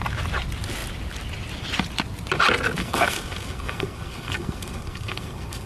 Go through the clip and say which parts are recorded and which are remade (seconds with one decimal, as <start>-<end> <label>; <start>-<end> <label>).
0.0-2.8 recorded; 2.8-5.7 remade